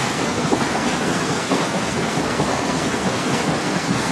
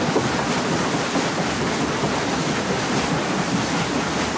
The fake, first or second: first